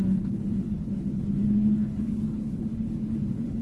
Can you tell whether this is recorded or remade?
remade